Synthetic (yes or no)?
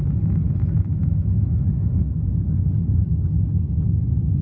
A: no